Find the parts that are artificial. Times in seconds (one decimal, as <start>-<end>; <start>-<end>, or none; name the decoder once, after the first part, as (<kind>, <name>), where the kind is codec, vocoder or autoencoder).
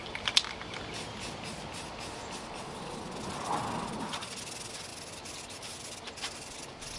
none